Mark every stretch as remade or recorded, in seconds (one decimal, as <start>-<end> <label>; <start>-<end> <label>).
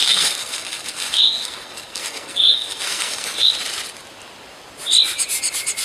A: 0.0-3.5 remade; 3.5-5.8 recorded